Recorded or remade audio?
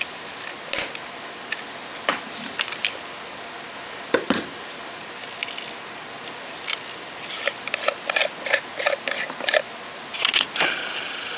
recorded